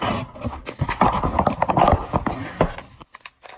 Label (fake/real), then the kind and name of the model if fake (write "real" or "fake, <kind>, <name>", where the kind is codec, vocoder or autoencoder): real